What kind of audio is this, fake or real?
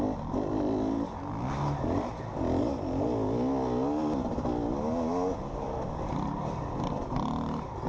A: real